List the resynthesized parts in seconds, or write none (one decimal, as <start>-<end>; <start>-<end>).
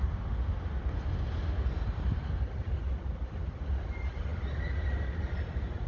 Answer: none